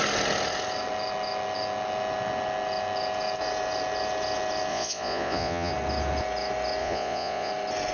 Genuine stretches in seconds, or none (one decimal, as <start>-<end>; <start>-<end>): 0.0-4.7; 5.7-6.8; 7.5-7.9